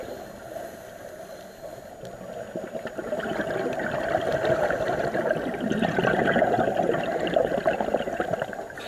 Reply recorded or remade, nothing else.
recorded